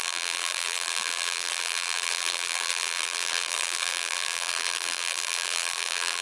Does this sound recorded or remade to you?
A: remade